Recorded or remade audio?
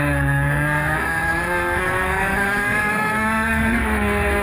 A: remade